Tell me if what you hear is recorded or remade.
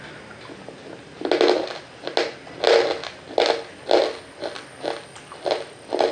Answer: recorded